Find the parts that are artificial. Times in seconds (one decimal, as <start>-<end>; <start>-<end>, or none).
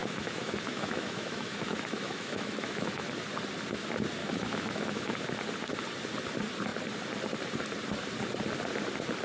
0.0-3.1; 4.2-5.2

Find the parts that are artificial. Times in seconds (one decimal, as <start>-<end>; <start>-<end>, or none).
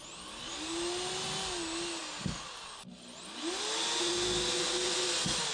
none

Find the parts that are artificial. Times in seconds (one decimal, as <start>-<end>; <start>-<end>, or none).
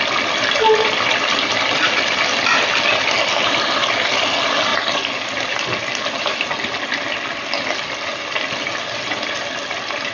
none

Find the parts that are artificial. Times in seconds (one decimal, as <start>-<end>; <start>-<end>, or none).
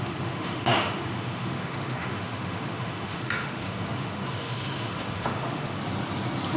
0.0-5.8